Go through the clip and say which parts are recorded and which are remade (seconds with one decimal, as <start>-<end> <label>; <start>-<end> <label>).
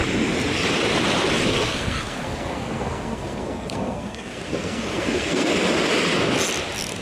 0.0-1.5 recorded; 1.5-5.5 remade; 5.5-7.0 recorded